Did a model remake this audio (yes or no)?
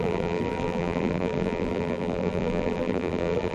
yes